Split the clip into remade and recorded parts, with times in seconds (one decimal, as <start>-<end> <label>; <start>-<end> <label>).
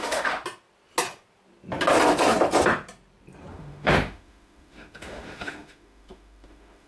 0.0-0.4 remade; 0.4-3.5 recorded; 3.5-6.9 remade